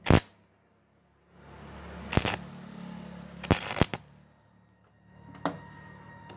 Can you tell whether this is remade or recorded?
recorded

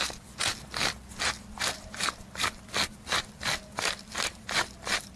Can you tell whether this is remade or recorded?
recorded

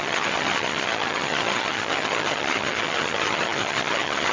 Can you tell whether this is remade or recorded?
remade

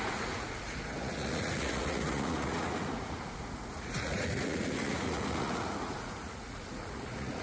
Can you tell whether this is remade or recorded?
remade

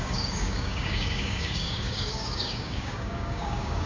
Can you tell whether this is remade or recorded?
remade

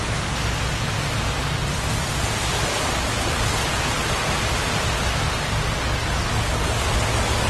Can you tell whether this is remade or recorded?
recorded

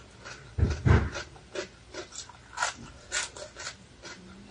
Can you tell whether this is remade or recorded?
recorded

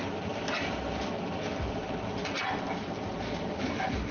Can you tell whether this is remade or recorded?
recorded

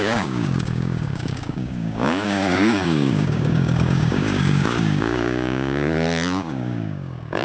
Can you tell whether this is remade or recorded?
remade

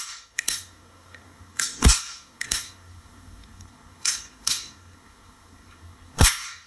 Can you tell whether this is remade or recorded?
remade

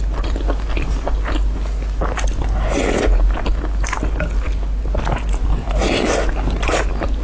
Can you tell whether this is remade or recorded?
recorded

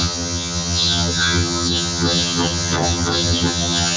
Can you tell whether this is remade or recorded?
remade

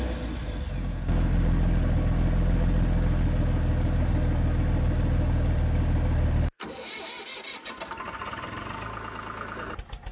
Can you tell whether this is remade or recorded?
recorded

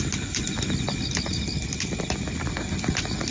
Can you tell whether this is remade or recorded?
recorded